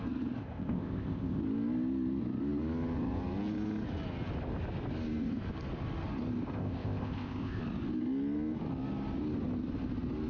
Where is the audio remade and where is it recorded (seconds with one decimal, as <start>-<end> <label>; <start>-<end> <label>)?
0.0-0.4 recorded; 0.4-1.4 remade; 1.4-6.5 recorded; 6.5-7.6 remade; 7.6-10.3 recorded